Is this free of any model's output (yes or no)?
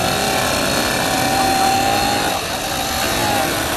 yes